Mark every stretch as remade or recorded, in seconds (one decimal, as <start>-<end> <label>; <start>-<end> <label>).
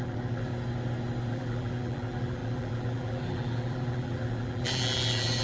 0.0-0.5 remade; 0.5-1.3 recorded; 1.3-5.4 remade